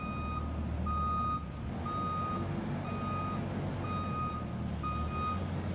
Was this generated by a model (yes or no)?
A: no